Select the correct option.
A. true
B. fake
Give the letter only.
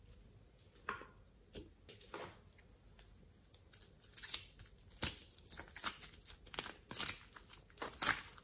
A